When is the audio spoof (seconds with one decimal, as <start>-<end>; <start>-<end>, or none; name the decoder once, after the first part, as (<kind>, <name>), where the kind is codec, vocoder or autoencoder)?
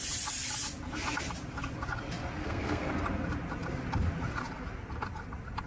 2.4-2.9 (codec, SNAC)